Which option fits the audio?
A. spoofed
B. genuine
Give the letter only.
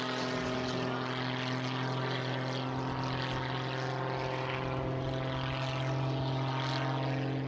B